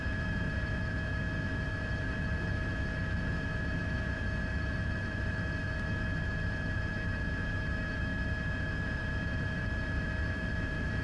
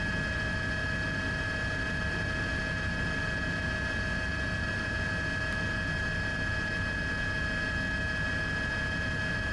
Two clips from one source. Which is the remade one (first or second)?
first